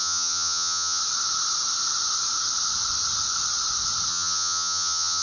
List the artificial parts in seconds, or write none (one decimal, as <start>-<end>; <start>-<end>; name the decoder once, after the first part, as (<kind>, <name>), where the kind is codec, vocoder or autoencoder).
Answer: 0.0-1.0 (vocoder, HiFi-GAN); 4.1-5.2